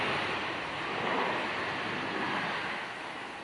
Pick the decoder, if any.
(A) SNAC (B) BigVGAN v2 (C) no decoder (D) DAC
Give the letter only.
C